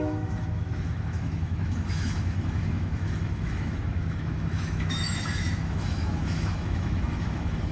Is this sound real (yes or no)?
no